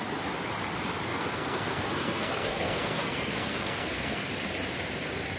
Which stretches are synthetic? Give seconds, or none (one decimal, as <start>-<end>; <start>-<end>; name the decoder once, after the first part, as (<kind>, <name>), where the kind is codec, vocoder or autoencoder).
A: 1.1-4.3 (codec, SNAC)